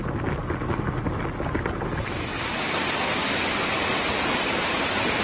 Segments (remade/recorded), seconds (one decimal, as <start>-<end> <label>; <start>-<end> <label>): 0.0-5.2 recorded